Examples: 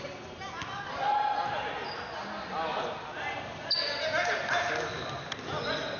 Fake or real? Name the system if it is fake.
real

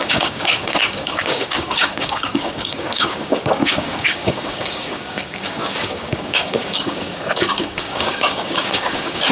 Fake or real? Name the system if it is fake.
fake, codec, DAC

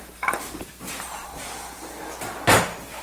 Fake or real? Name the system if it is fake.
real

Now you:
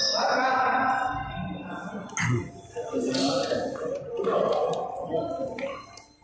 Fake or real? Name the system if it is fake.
real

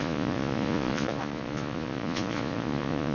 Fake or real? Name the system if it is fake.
fake, vocoder, Vocos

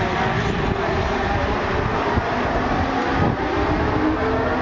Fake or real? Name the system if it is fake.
real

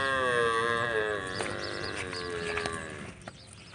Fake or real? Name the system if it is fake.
real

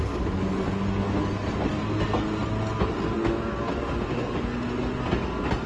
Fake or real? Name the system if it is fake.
real